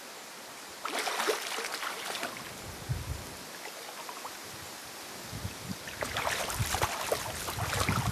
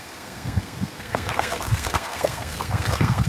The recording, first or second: first